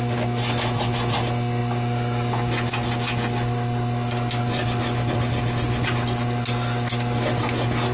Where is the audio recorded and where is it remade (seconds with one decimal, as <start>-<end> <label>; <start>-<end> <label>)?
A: 0.0-7.9 recorded